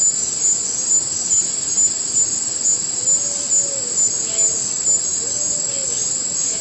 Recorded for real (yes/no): yes